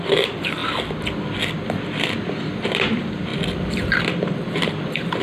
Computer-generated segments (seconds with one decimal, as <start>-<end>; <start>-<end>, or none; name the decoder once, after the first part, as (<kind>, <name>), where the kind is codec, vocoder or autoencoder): 0.0-0.6 (vocoder, BigVGAN v2); 2.7-5.2